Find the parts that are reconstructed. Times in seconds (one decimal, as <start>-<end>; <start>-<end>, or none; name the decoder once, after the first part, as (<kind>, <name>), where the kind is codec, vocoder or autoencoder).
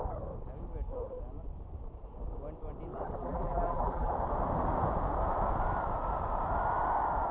3.2-4.1 (vocoder, BigVGAN v2)